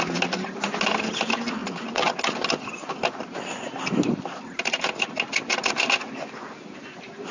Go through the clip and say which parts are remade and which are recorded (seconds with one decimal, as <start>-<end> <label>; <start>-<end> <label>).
0.0-7.3 recorded